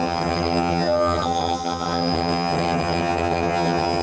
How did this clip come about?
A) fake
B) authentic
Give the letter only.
A